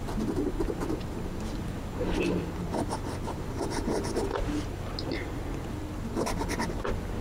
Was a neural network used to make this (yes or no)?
no